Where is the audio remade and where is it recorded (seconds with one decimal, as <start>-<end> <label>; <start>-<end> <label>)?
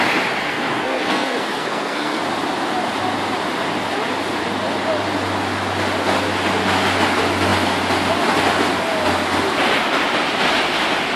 0.0-0.4 recorded; 0.4-2.2 remade; 2.2-11.2 recorded